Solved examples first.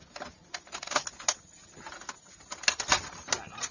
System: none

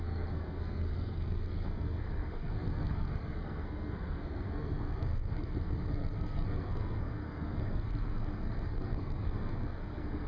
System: codec, SNAC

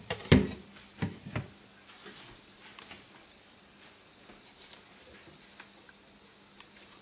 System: none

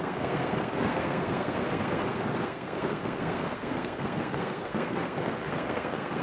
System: codec, SNAC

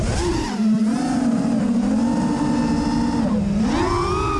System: none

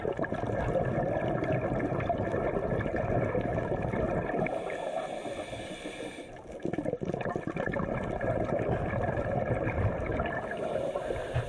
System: none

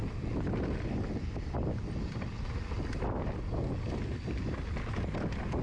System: none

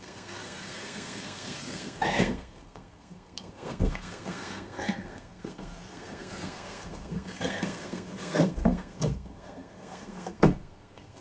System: codec, SNAC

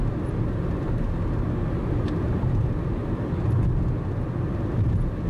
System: none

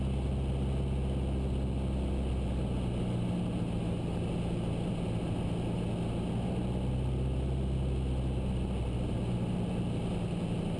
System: none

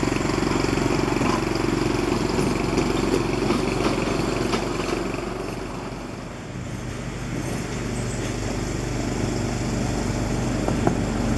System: none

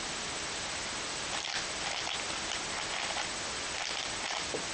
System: none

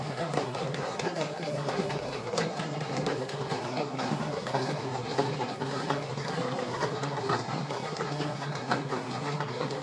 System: codec, SNAC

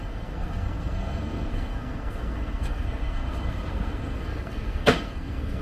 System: codec, SNAC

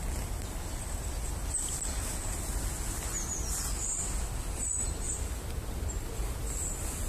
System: none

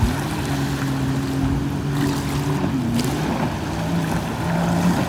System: none